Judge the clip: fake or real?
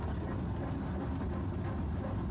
real